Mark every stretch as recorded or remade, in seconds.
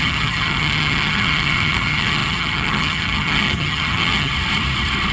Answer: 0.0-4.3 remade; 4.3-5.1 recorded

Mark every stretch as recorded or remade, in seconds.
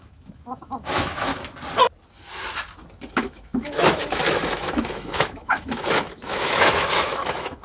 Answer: 0.0-1.3 remade; 1.3-3.1 recorded; 3.1-7.6 remade